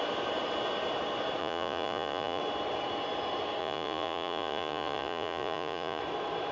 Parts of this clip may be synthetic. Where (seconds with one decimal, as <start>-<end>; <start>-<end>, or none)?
1.4-2.4; 3.6-6.0